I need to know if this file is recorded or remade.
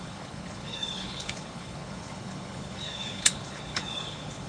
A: remade